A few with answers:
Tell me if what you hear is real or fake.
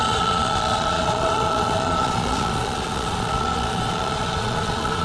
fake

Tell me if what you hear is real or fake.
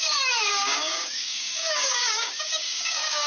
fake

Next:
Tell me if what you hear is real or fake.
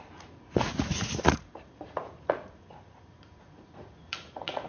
fake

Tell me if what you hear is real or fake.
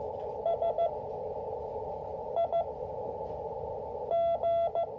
real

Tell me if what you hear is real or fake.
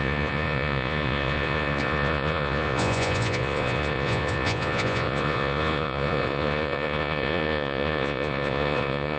fake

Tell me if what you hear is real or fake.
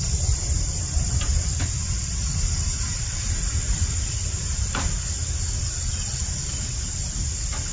real